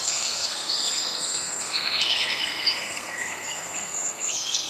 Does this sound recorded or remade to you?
remade